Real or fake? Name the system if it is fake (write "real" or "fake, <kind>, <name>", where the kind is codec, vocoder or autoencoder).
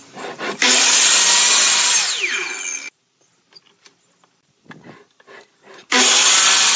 real